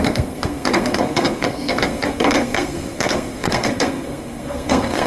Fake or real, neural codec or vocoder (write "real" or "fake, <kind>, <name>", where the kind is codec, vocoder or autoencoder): fake, codec, SNAC